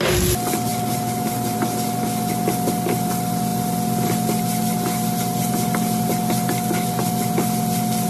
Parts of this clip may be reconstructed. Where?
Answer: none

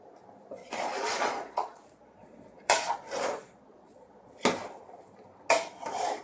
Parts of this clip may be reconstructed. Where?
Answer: 0.6-4.3 (vocoder, Vocos)

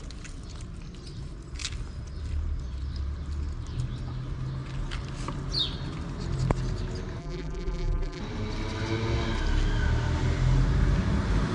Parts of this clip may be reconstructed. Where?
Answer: 7.2-8.2 (vocoder, BigVGAN v2)

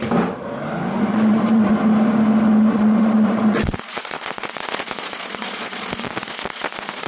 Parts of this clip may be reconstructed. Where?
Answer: 1.1-1.7 (vocoder, Vocos); 2.7-7.1